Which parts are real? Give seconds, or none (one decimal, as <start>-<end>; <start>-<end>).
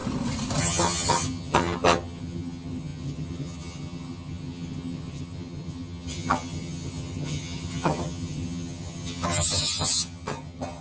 0.0-0.6